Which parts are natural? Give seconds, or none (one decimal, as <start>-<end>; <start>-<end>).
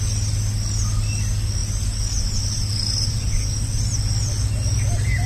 0.0-5.3